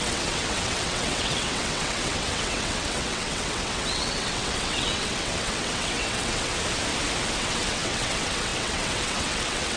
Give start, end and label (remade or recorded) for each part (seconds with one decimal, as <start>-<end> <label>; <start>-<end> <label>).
0.0-6.5 remade; 6.5-7.4 recorded; 7.4-9.8 remade